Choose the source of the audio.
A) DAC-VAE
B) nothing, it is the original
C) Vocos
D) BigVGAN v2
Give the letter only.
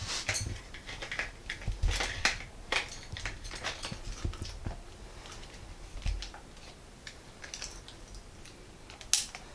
B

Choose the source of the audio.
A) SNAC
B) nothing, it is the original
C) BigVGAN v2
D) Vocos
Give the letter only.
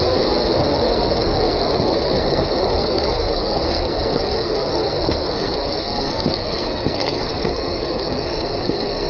A